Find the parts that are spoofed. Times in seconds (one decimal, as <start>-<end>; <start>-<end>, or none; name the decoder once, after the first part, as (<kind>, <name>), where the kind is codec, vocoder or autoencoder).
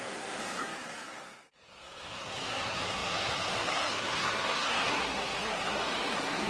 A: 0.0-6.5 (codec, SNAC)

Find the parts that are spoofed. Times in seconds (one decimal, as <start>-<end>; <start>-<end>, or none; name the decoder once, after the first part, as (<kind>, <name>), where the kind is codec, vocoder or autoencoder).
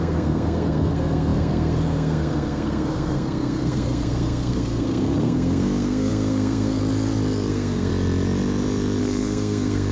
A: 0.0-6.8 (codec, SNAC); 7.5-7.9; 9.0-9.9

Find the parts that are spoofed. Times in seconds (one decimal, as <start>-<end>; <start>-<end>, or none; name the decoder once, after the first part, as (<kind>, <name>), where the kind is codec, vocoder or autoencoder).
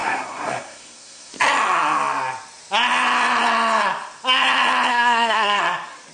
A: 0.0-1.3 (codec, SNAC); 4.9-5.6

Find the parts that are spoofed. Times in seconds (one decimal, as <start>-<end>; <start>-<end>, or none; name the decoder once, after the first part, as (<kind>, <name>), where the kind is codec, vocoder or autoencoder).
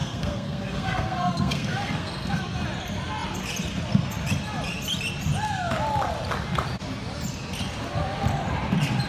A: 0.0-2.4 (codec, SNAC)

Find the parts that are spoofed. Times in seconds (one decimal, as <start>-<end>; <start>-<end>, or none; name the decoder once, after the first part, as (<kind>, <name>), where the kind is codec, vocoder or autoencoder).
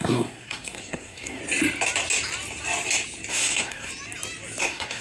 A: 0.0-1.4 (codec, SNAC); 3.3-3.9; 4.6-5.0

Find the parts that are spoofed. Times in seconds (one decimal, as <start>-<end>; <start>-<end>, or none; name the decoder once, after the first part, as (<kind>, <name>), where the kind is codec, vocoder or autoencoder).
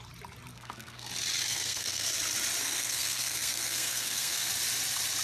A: 0.5-1.1 (codec, SNAC); 1.5-2.1; 2.6-4.5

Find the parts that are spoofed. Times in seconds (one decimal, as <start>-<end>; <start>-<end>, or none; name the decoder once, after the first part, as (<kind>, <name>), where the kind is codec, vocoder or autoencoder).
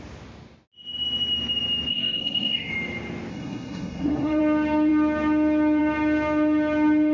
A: 1.9-2.7 (codec, SNAC); 3.3-4.4